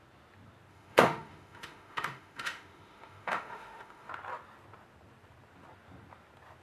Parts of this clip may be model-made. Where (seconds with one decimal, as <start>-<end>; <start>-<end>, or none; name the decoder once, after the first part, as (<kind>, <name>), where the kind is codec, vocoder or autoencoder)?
0.7-4.1 (autoencoder, DAC-VAE)